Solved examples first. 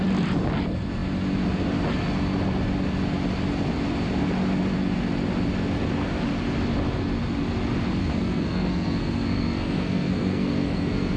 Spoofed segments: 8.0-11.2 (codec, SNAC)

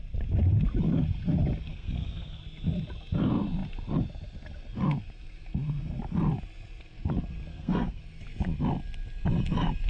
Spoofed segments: 1.7-2.4 (codec, SNAC); 7.5-8.0

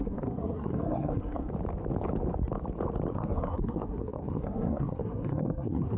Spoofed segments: 0.0-1.5 (codec, SNAC); 3.1-6.0

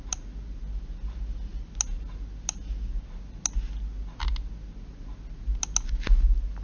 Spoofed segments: none